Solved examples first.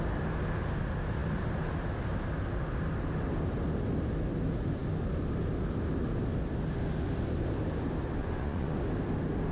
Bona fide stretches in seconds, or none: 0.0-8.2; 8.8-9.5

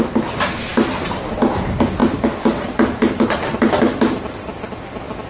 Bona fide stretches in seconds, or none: 0.0-5.3

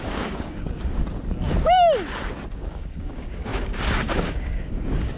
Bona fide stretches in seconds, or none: 1.0-2.5

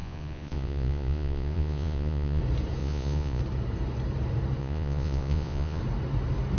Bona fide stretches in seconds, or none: 2.4-2.8; 3.4-4.6; 5.8-6.6

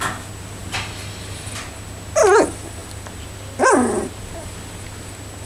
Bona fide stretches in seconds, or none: 0.0-5.5

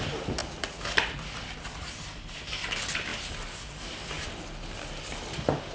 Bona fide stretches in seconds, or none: 0.0-5.7

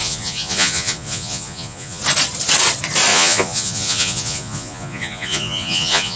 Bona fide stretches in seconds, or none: 2.0-3.1